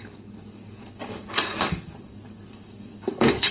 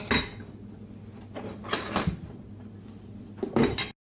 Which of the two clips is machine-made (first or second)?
first